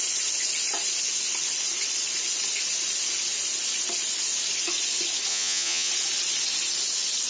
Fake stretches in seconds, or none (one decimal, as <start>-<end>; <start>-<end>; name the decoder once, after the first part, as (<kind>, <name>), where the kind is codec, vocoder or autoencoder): 5.3-5.9 (vocoder, Vocos)